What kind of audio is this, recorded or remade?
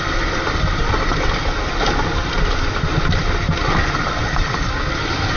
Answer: recorded